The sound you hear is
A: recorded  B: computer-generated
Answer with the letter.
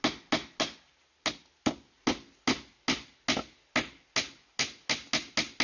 A